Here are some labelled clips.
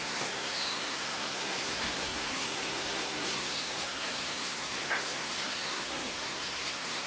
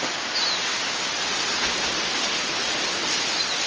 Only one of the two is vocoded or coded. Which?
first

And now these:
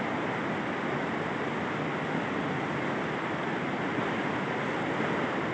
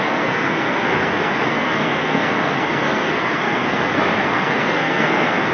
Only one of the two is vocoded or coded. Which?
second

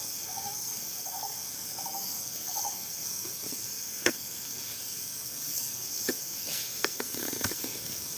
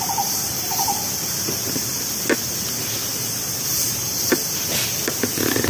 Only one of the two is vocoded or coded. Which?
first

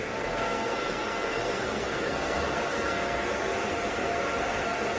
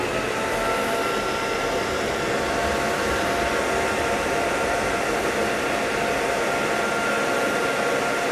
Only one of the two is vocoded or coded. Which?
first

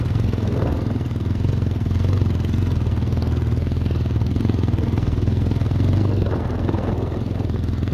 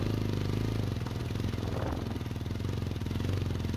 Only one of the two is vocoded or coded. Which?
first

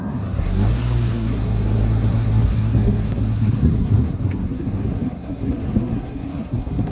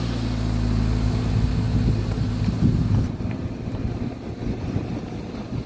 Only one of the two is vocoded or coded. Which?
first